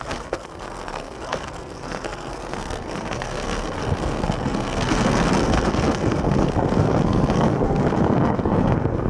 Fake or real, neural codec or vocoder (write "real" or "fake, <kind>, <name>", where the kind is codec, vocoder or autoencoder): fake, codec, SNAC